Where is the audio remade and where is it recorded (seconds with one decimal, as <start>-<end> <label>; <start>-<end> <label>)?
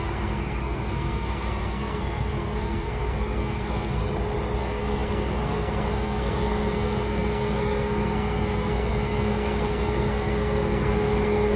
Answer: 0.0-4.0 remade; 4.0-4.6 recorded; 4.6-11.6 remade